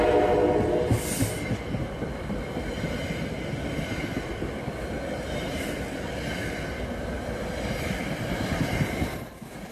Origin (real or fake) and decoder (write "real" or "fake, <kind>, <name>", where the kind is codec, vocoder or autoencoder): real